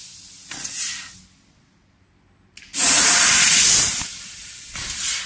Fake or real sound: real